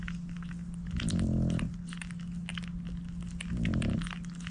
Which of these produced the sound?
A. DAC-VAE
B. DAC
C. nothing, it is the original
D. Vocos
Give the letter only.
C